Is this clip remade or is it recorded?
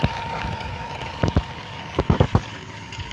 remade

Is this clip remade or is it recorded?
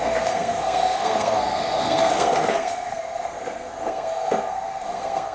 remade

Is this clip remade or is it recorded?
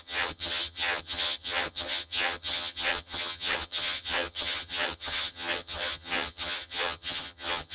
remade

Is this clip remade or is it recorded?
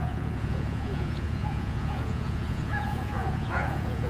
remade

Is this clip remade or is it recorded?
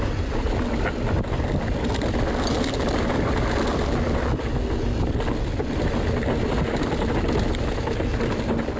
recorded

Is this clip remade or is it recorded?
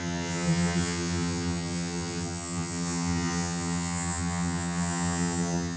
remade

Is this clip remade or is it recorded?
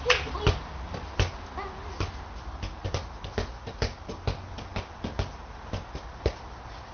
recorded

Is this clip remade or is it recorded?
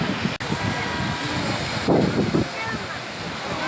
recorded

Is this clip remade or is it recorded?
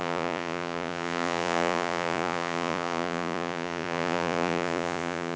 remade